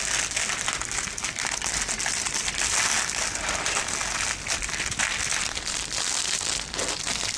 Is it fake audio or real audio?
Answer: real